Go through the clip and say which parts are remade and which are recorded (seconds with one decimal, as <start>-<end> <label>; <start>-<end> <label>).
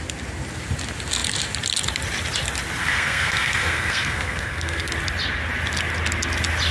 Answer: 0.0-2.8 recorded; 2.8-4.9 remade; 4.9-6.7 recorded